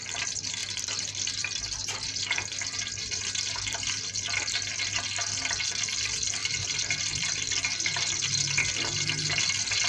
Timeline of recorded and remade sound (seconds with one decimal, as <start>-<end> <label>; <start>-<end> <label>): 0.0-6.4 recorded; 6.4-7.3 remade; 7.3-9.9 recorded